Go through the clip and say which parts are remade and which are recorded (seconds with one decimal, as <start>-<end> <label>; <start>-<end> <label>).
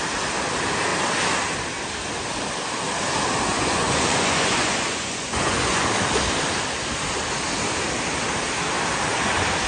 0.0-3.5 recorded; 3.5-5.9 remade; 5.9-9.7 recorded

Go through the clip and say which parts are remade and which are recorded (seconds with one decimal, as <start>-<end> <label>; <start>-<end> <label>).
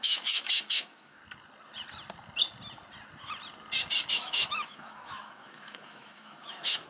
0.0-1.2 remade; 1.2-4.1 recorded; 4.1-6.9 remade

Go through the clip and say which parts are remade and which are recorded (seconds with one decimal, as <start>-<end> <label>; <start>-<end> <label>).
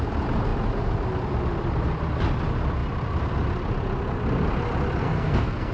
0.0-5.0 recorded; 5.0-5.7 remade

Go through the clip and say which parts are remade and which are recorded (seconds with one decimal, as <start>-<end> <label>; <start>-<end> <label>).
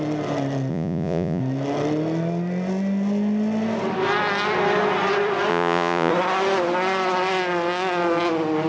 0.0-0.7 recorded; 0.7-1.4 remade; 1.4-5.5 recorded; 5.5-6.1 remade; 6.1-8.7 recorded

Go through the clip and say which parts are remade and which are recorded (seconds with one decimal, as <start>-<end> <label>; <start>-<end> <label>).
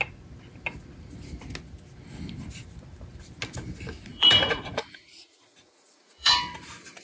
0.0-4.1 recorded; 4.1-6.3 remade; 6.3-7.0 recorded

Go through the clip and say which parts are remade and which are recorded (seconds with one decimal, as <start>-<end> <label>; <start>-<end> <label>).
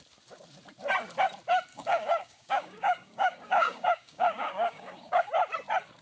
0.0-1.7 recorded; 1.7-5.3 remade; 5.3-6.0 recorded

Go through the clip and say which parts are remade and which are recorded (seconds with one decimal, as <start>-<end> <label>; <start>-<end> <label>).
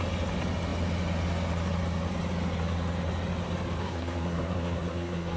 0.0-3.8 recorded; 3.8-5.4 remade